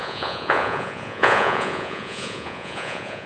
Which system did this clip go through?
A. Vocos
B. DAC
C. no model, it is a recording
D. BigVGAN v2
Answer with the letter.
A